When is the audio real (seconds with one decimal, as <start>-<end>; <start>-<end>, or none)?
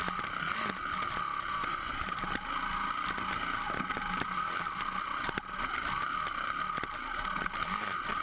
0.0-1.5; 2.0-8.2